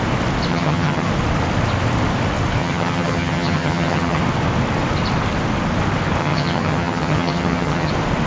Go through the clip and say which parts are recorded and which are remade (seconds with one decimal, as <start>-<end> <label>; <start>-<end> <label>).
0.0-0.5 recorded; 0.5-1.1 remade; 1.1-2.6 recorded; 2.6-4.2 remade; 4.2-6.2 recorded; 6.2-7.9 remade; 7.9-8.3 recorded